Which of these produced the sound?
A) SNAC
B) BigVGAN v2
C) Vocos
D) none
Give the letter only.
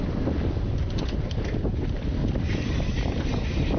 B